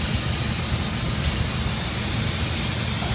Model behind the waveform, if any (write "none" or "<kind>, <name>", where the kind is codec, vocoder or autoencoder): none